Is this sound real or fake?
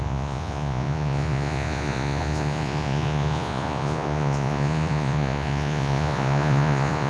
fake